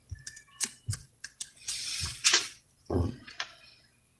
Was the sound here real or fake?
fake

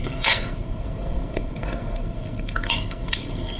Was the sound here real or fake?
fake